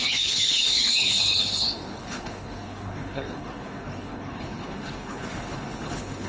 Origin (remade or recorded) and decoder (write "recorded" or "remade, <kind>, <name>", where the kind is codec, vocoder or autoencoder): remade, codec, HILCodec